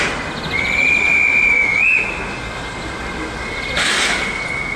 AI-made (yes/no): no